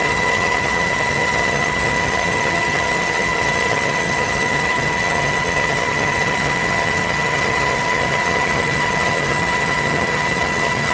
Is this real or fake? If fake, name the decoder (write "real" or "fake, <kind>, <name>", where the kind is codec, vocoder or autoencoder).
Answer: fake, vocoder, HiFi-GAN